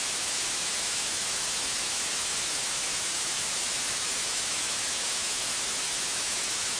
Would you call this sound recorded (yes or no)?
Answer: no